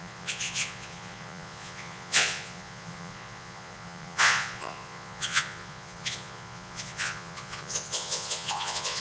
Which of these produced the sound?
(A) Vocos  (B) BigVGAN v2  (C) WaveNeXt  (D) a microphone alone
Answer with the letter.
A